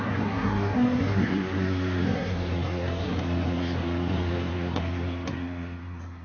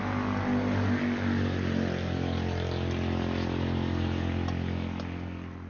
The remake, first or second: first